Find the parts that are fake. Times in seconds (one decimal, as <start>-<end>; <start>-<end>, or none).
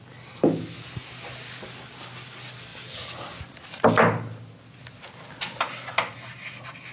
none